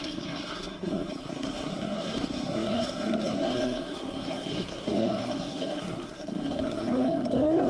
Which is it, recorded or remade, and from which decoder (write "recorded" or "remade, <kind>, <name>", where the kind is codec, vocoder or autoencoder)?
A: remade, codec, SNAC